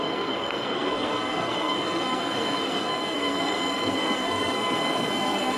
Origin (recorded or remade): remade